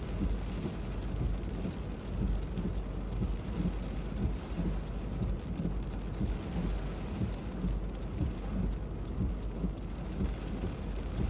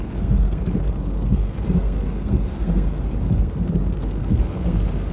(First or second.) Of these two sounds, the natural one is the first